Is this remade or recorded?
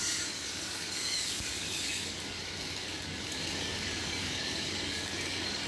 remade